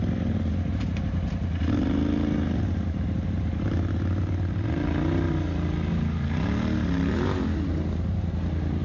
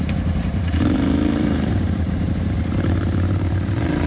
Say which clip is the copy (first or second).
second